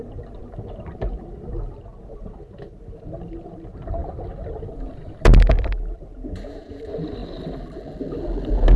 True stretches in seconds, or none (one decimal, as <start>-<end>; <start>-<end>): 0.0-8.8